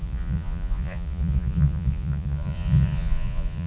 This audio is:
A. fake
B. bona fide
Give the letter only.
A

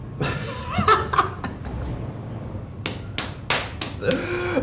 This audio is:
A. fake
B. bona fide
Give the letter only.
B